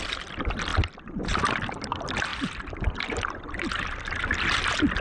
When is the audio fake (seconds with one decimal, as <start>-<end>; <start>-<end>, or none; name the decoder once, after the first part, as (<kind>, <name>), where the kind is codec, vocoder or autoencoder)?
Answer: 0.0-0.7 (vocoder, BigVGAN v2); 1.4-2.3; 4.4-5.0